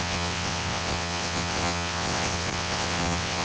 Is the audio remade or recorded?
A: remade